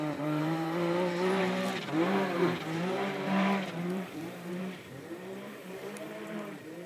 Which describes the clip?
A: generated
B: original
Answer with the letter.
A